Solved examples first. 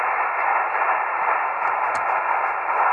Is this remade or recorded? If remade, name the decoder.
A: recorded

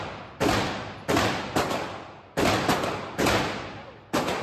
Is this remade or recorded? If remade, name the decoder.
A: recorded